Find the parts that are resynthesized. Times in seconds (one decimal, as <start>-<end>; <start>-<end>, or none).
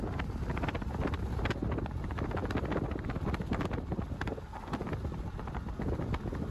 none